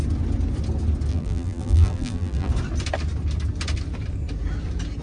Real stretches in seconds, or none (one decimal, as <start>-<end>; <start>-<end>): 0.0-1.1; 2.5-5.0